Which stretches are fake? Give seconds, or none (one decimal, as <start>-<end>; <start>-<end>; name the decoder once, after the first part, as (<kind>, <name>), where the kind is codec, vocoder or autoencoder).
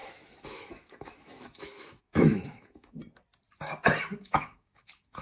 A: 0.0-3.0 (autoencoder, DAC-VAE); 4.2-5.2